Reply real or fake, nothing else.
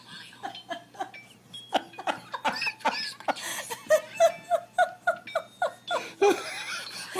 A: real